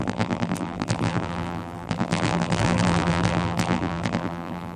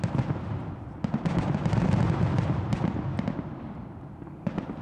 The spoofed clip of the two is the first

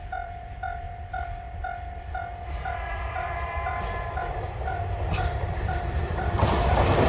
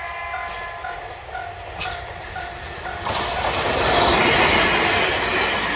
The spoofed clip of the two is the first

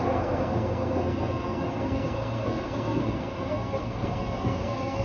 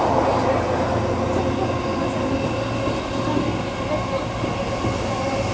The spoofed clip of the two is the first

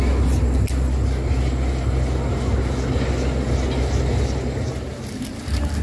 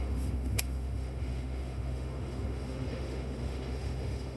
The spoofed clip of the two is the second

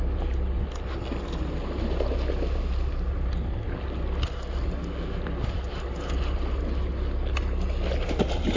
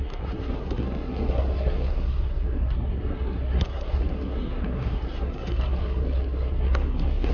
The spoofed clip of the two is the second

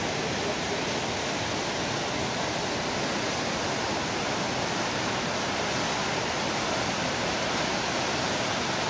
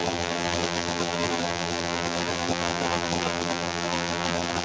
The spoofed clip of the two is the second